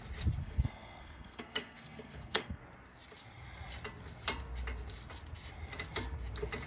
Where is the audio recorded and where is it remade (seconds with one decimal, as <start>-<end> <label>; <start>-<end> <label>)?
0.0-0.4 recorded; 0.4-2.6 remade; 2.6-6.7 recorded